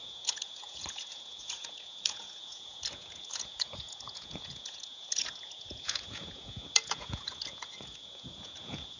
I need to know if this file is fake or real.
fake